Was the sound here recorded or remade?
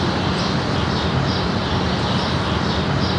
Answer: remade